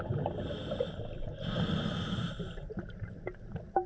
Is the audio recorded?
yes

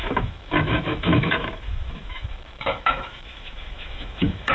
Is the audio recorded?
no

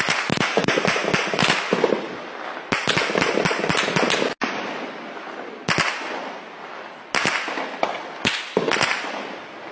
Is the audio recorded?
yes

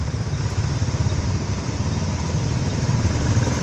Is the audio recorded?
no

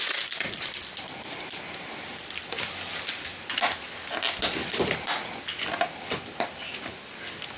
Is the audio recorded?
yes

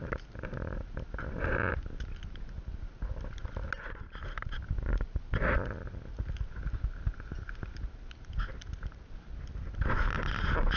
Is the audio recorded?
yes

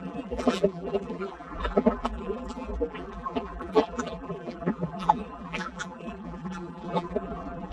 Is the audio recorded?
no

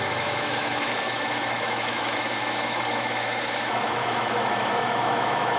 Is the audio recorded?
no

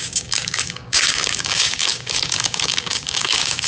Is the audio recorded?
no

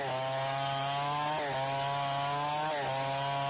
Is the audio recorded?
yes